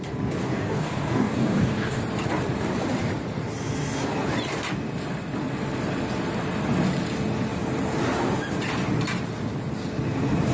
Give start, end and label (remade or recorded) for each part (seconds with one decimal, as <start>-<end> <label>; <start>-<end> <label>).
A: 0.0-0.4 recorded; 0.4-2.0 remade; 2.0-10.5 recorded